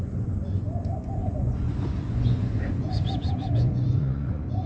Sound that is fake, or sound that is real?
fake